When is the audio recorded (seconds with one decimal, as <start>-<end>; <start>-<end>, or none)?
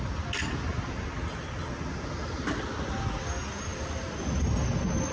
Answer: 0.0-5.1